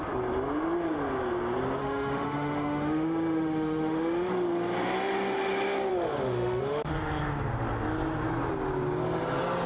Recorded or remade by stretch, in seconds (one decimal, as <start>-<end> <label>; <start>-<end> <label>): 0.0-1.8 recorded; 1.8-4.3 remade; 4.3-5.9 recorded; 5.9-6.9 remade; 6.9-9.7 recorded